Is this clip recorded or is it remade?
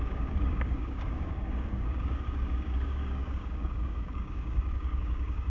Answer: remade